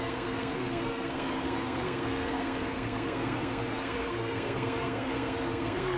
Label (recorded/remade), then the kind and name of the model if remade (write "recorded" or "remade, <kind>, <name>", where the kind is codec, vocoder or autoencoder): remade, codec, SNAC